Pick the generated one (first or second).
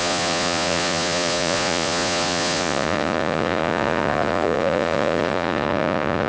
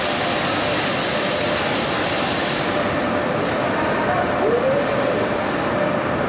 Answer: first